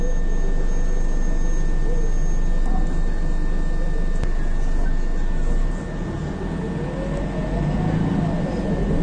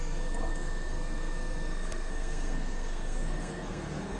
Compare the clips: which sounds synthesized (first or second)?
second